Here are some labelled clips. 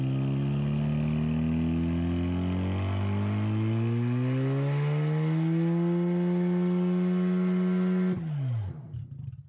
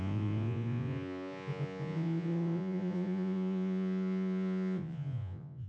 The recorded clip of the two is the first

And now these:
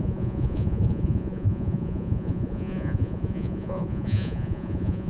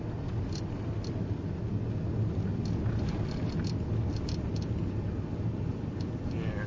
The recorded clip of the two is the second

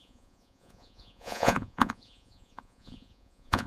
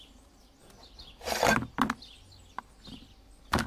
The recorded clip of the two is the second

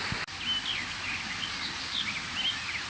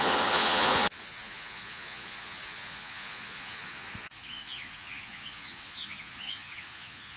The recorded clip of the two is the first